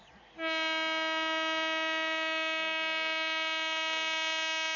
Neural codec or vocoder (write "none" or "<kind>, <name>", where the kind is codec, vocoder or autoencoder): none